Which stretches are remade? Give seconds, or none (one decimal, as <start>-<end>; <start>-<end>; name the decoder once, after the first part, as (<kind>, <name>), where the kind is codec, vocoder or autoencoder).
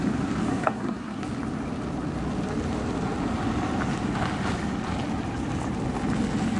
0.5-1.2 (codec, SNAC)